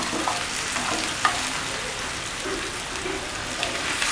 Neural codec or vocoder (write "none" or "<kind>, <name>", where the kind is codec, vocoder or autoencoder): none